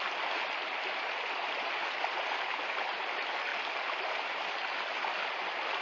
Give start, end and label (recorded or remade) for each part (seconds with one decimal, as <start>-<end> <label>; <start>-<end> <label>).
0.0-5.8 recorded